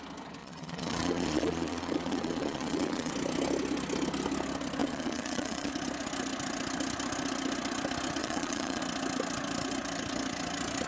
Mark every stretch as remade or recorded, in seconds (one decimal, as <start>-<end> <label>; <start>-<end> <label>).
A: 0.0-0.4 recorded; 0.4-3.1 remade; 3.1-4.8 recorded; 4.8-5.7 remade; 5.7-8.2 recorded; 8.2-8.8 remade; 8.8-10.9 recorded